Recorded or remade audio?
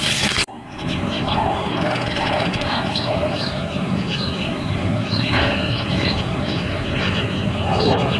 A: remade